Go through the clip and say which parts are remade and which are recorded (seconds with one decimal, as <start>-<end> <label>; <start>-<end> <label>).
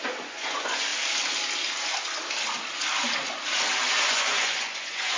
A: 0.0-0.9 remade; 0.9-3.9 recorded; 3.9-5.2 remade